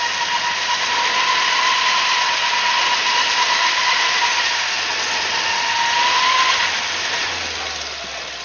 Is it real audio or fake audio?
real